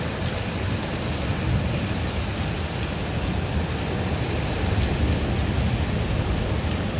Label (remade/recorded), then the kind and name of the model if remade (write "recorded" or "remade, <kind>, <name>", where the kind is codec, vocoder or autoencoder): recorded